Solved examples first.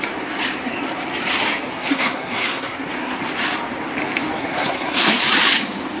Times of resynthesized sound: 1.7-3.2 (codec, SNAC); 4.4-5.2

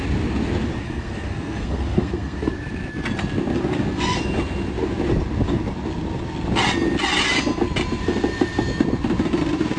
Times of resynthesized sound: 0.8-2.5 (codec, SNAC)